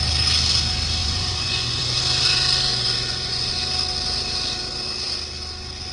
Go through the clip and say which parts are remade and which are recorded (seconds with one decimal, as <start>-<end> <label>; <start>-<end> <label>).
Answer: 0.0-1.0 recorded; 1.0-2.0 remade; 2.0-2.7 recorded; 2.7-3.6 remade; 3.6-5.9 recorded